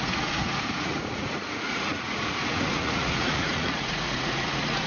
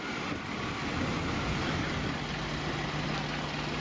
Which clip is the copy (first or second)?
first